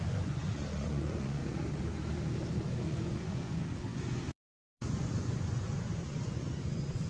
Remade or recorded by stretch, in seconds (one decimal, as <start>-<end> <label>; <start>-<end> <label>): 0.0-1.4 remade; 1.4-2.8 recorded; 2.8-7.1 remade